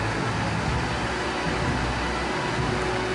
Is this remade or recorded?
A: recorded